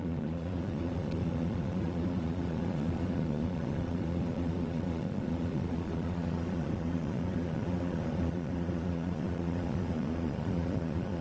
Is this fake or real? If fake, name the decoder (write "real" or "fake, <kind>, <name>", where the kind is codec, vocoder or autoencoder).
fake, vocoder, Vocos